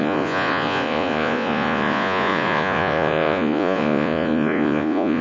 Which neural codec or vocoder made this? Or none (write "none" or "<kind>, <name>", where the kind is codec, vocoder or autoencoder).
vocoder, Vocos